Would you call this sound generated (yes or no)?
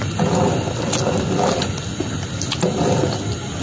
no